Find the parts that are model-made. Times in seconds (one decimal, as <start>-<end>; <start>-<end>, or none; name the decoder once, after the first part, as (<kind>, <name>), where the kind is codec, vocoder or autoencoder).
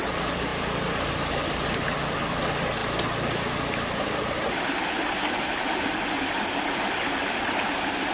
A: none